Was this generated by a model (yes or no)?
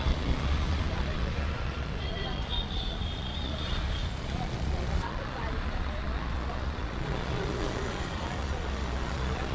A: yes